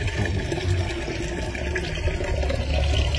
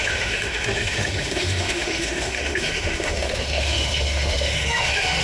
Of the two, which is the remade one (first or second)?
second